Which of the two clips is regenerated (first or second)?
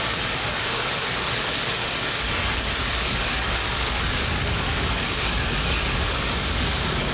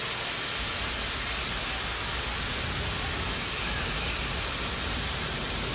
first